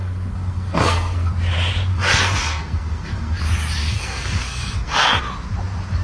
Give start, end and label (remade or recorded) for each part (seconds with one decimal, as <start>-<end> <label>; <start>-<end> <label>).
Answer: 0.0-1.3 remade; 1.3-1.9 recorded; 1.9-3.4 remade; 3.4-3.8 recorded; 3.8-5.2 remade; 5.2-6.0 recorded